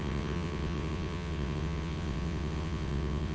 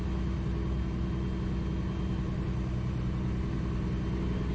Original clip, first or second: second